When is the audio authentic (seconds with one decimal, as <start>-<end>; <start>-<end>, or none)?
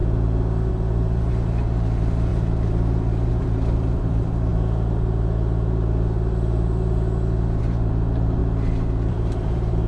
0.0-0.7; 4.5-7.6; 8.4-9.1